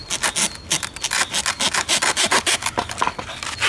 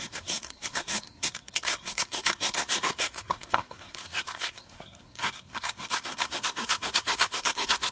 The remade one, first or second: second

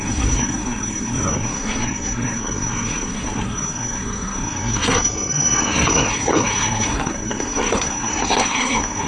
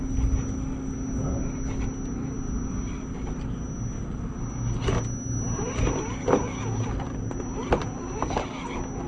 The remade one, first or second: first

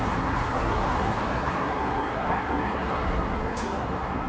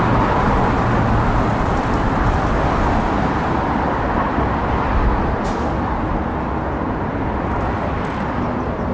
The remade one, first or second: first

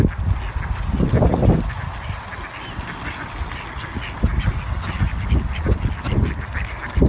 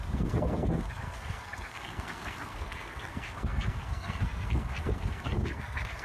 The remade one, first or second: second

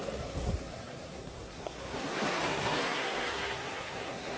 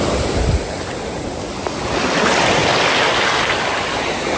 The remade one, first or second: first